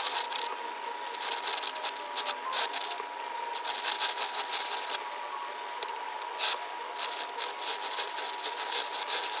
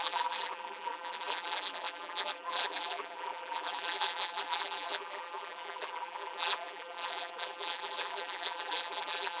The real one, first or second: first